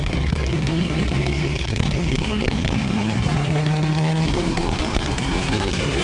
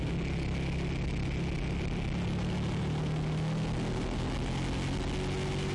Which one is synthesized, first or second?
first